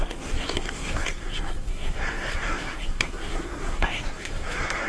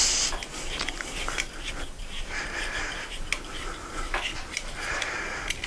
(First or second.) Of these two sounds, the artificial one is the first